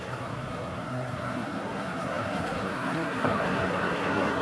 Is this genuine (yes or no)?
no